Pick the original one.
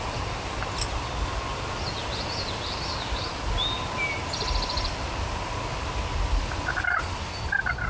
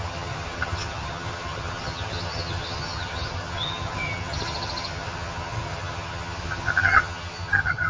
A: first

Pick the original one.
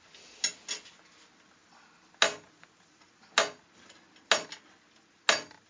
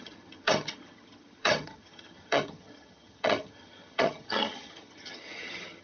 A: first